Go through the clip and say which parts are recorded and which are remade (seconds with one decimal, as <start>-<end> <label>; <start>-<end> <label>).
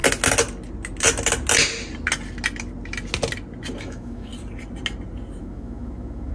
0.0-3.8 recorded; 3.8-4.3 remade; 4.3-5.4 recorded; 5.4-6.3 remade